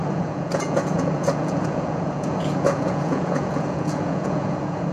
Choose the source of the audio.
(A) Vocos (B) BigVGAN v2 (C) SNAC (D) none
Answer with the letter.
A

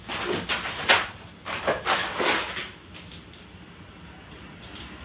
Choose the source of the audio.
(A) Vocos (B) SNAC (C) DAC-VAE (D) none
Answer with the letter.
D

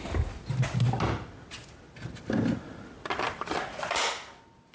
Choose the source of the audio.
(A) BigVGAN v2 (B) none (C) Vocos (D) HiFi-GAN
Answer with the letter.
B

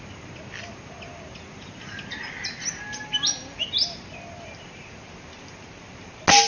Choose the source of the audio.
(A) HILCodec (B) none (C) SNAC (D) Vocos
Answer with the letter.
B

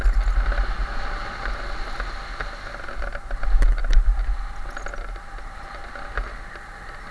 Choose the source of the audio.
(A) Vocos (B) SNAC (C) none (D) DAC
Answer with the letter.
C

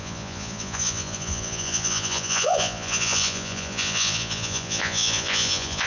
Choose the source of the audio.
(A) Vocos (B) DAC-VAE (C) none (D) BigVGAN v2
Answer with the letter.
A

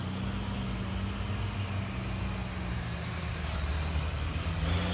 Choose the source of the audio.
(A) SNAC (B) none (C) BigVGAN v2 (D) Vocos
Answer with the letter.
B